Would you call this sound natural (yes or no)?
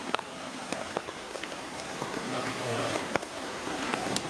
no